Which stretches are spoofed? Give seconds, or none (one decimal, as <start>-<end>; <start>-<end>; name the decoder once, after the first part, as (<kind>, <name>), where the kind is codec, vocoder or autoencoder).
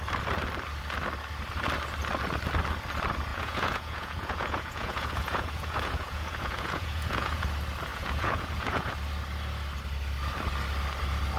3.3-7.4 (vocoder, Vocos); 7.9-8.9